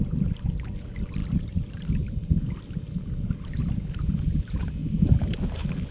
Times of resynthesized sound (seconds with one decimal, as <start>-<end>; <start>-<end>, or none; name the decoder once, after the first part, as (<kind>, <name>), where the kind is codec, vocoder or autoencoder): 1.2-2.4 (vocoder, BigVGAN v2); 4.8-5.9